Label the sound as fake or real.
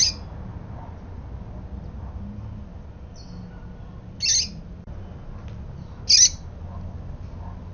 real